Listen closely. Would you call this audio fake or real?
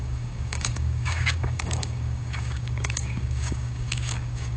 fake